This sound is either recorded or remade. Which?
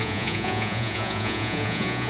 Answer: remade